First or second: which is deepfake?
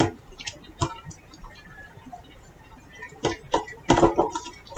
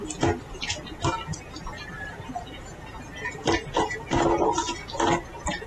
first